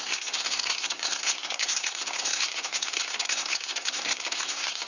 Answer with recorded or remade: remade